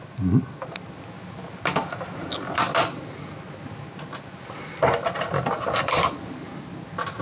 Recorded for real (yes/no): yes